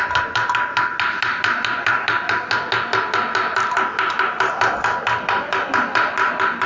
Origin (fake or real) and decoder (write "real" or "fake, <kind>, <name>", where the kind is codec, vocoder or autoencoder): real